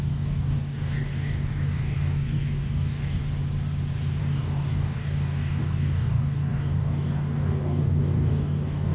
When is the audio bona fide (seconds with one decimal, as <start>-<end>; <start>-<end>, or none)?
3.2-4.2